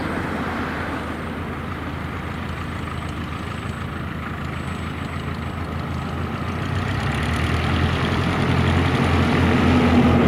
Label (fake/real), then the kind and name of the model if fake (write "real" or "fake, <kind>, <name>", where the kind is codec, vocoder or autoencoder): real